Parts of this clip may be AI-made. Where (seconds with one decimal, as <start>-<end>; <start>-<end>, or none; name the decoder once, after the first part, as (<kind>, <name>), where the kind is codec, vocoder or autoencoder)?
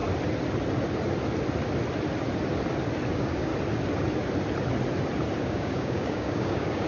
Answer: 3.1-3.5 (codec, DAC); 5.4-6.9